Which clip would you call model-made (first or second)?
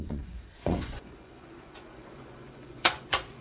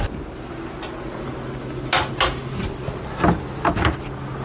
first